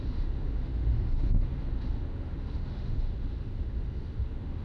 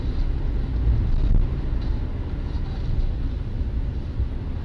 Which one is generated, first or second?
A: first